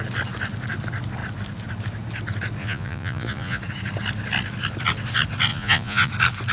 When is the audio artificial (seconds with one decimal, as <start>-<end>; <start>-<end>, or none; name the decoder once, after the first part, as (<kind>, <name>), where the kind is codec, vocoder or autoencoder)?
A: 2.6-3.6 (vocoder, Vocos); 5.5-6.1